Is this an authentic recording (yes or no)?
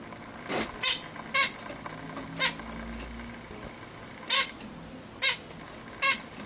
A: yes